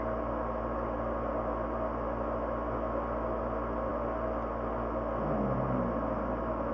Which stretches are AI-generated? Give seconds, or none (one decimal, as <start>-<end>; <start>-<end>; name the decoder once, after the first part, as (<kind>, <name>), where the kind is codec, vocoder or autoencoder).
none